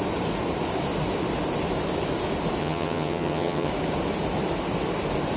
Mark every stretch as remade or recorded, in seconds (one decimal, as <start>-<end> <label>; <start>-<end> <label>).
0.0-2.6 recorded; 2.6-3.7 remade; 3.7-5.4 recorded